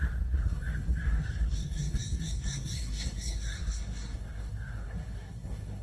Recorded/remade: remade